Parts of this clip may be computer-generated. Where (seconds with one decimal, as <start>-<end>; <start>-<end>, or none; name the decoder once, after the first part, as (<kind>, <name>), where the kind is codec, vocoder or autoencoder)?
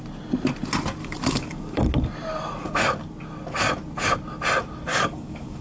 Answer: 1.0-1.8 (codec, DAC); 4.9-5.6